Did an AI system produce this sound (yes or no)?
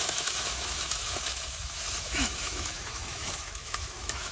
yes